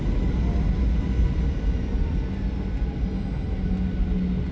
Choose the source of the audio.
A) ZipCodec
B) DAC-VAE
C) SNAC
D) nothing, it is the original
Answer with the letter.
D